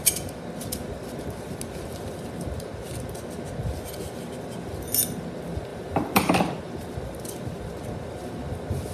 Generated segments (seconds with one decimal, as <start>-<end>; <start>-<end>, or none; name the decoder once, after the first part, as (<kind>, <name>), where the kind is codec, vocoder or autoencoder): 5.7-6.6 (vocoder, BigVGAN v2)